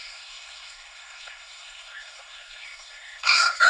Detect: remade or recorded remade